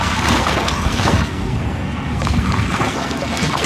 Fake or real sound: fake